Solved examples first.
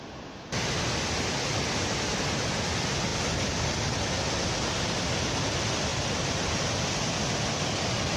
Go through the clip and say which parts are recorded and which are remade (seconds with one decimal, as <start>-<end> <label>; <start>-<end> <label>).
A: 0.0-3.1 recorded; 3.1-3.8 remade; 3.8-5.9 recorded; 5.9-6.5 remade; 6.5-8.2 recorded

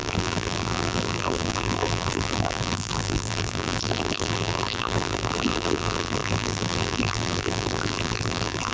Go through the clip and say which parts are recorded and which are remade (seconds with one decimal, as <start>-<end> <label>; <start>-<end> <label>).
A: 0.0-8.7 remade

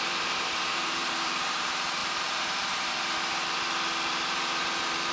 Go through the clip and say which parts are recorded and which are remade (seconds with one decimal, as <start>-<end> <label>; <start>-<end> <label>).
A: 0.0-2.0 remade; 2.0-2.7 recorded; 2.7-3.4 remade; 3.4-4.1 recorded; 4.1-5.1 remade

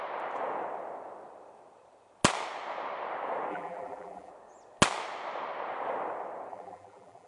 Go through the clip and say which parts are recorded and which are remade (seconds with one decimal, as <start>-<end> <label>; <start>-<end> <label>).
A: 0.0-3.5 recorded; 3.5-4.3 remade; 4.3-6.5 recorded; 6.5-7.3 remade

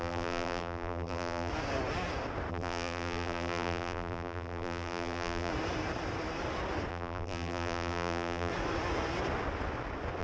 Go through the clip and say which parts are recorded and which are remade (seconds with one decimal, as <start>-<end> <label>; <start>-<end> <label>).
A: 0.0-1.5 remade; 1.5-2.5 recorded; 2.5-5.5 remade; 5.5-6.9 recorded; 6.9-8.5 remade; 8.5-10.2 recorded